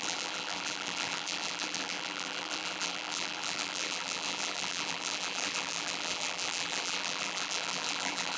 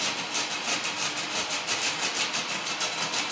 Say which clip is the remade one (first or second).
first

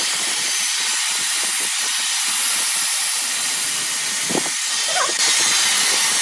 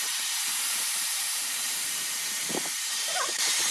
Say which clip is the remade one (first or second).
second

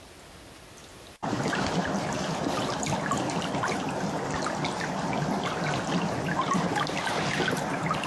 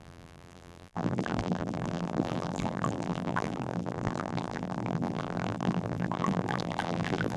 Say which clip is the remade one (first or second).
second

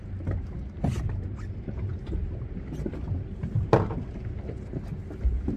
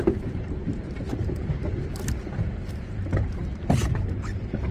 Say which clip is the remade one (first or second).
second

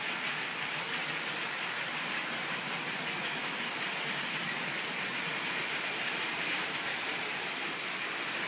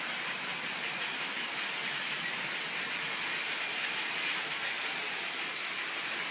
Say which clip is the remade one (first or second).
first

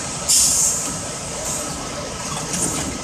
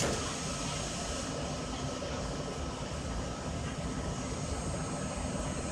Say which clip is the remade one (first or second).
first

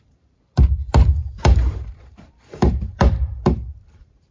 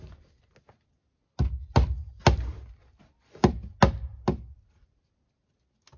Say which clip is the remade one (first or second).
first